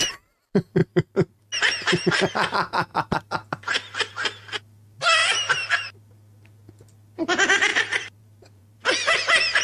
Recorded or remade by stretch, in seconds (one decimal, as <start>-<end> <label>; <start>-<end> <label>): 0.0-0.8 recorded; 0.8-1.4 remade; 1.4-2.9 recorded; 2.9-4.1 remade; 4.1-5.2 recorded; 5.2-6.0 remade; 6.0-7.7 recorded; 7.7-9.2 remade; 9.2-9.6 recorded